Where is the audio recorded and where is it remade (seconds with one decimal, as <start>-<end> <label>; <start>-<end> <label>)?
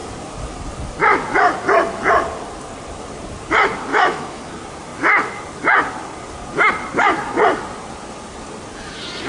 0.0-3.9 recorded; 3.9-4.5 remade; 4.5-9.3 recorded